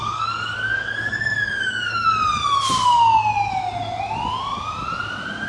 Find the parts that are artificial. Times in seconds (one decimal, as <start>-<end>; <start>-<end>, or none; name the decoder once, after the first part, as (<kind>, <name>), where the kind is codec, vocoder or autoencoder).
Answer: 0.0-2.1 (codec, DAC)

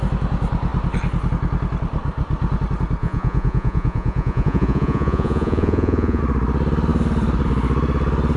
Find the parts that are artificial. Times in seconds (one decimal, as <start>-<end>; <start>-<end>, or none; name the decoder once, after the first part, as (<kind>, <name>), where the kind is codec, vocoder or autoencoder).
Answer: 3.0-6.2 (vocoder, Vocos)